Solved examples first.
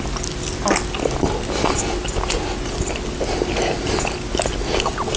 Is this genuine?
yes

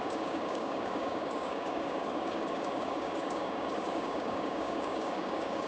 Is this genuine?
no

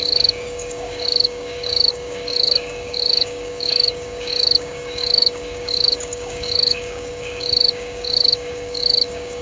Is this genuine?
no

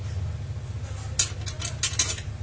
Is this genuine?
yes